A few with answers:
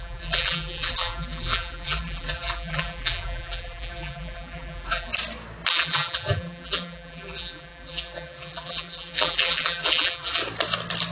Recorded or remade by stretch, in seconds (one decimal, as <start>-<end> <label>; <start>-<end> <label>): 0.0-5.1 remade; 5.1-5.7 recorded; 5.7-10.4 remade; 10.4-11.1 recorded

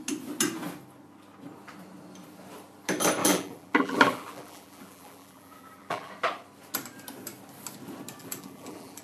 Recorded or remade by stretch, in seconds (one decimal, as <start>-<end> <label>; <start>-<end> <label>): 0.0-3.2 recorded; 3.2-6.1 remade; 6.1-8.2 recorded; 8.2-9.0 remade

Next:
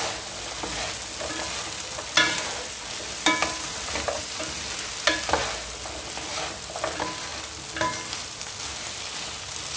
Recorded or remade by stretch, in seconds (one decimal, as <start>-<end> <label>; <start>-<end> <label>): 0.0-9.8 recorded

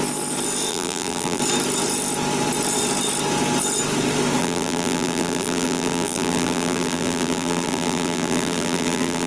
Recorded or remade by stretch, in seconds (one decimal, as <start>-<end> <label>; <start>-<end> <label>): 0.0-0.7 recorded; 0.7-1.4 remade; 1.4-4.4 recorded; 4.4-9.3 remade